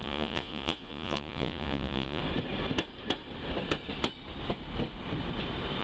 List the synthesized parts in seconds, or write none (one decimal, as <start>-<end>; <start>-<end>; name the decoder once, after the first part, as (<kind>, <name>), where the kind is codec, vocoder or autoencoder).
0.0-2.2 (vocoder, Vocos)